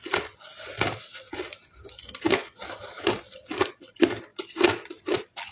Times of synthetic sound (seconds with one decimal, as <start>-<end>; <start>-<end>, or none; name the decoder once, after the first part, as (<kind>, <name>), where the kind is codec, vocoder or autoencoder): none